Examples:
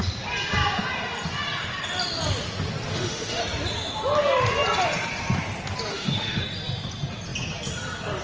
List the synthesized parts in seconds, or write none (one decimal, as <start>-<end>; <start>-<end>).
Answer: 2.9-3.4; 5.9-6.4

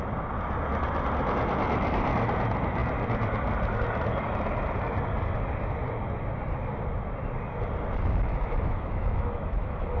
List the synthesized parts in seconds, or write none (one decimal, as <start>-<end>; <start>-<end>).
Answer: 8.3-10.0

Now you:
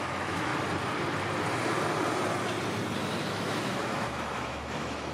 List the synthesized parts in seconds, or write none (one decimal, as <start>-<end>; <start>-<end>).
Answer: 0.0-0.5; 3.2-5.1

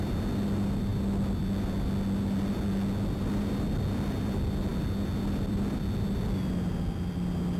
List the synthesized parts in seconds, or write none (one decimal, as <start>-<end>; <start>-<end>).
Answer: none